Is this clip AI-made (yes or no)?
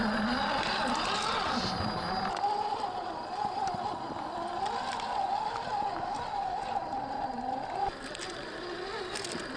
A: no